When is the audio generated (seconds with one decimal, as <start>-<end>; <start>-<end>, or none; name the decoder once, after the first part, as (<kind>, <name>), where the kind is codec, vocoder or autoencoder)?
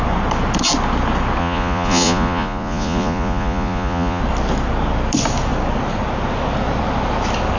1.4-4.2 (vocoder, Vocos)